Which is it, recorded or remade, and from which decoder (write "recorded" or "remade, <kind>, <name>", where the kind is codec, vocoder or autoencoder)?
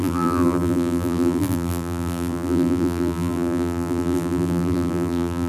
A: remade, vocoder, BigVGAN v2